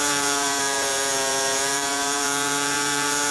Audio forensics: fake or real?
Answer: fake